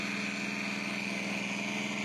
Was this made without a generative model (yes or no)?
yes